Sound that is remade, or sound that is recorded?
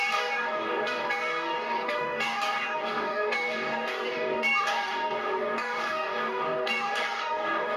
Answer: remade